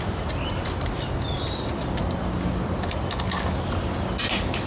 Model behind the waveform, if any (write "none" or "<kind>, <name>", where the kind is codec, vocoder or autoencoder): none